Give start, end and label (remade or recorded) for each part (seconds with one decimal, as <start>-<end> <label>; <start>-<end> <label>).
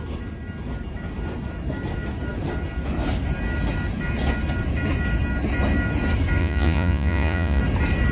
0.0-6.4 recorded; 6.4-7.6 remade; 7.6-8.1 recorded